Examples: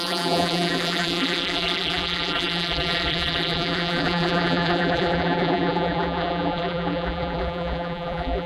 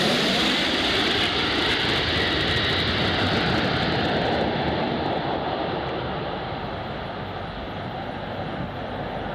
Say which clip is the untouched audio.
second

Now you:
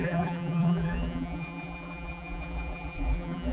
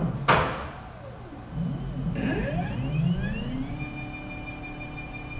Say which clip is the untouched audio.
second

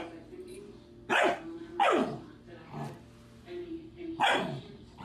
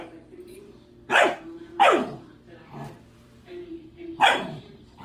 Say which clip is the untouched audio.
first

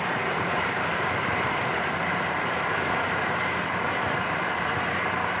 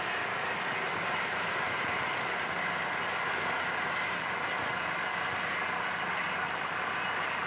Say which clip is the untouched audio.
second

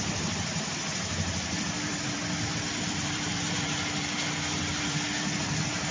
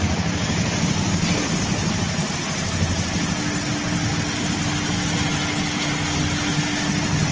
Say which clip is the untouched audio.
second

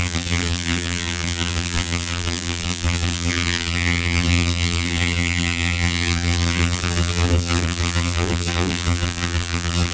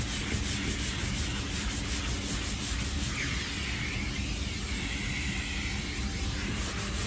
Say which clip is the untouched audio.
second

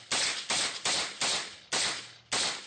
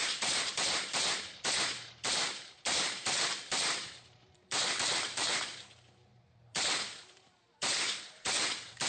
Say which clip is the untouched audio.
first